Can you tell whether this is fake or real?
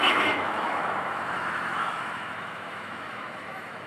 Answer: fake